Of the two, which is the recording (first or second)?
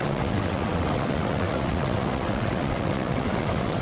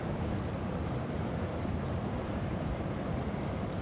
second